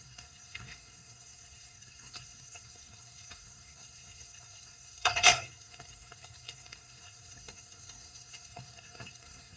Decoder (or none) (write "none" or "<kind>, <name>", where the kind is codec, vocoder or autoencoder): codec, SNAC